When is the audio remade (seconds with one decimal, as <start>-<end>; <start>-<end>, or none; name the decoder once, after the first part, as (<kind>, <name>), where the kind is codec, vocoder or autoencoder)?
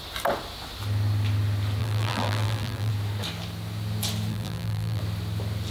1.8-2.9 (vocoder, BigVGAN v2); 4.3-5.0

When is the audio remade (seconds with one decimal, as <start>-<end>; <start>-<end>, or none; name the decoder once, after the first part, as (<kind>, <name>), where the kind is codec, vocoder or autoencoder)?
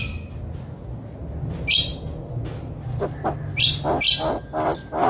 none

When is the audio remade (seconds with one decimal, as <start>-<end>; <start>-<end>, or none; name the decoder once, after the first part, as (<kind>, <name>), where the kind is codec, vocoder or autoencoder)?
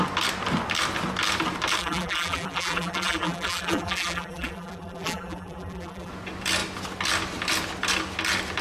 1.8-6.1 (vocoder, BigVGAN v2)